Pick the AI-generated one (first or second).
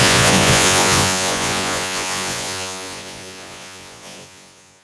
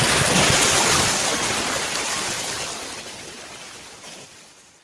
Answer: first